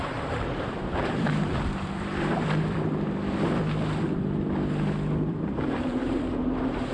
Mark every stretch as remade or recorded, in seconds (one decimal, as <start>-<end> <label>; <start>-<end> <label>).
0.0-1.5 remade; 1.5-5.6 recorded; 5.6-6.9 remade